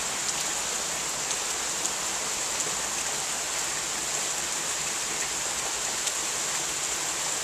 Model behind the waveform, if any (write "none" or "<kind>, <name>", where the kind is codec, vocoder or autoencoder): none